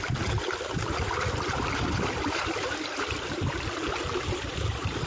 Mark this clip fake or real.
real